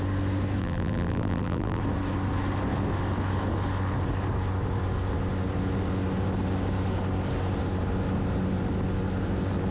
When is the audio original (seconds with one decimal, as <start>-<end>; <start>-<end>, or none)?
0.0-0.6; 1.8-9.7